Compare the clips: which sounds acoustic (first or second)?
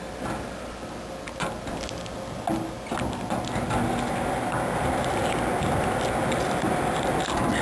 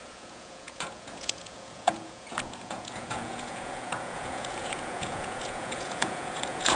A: first